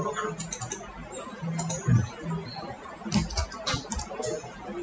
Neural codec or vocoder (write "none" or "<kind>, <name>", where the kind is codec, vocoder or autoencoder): none